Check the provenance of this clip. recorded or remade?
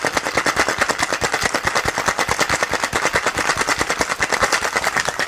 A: recorded